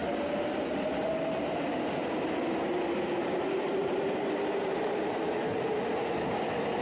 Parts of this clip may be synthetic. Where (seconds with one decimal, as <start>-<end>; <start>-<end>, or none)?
none

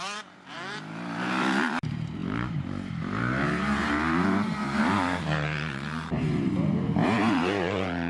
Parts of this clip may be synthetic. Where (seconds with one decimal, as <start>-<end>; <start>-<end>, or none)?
0.0-8.1

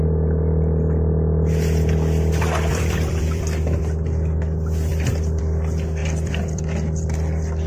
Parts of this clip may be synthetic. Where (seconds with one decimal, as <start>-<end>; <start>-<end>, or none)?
2.7-3.8; 4.9-5.4; 6.0-7.7